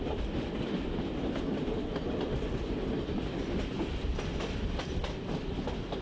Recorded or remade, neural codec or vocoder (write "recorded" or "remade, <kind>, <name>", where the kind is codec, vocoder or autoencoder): recorded